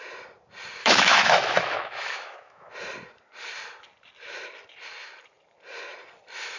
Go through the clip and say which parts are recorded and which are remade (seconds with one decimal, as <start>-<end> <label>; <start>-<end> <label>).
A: 0.0-0.8 recorded; 0.8-2.7 remade; 2.7-6.6 recorded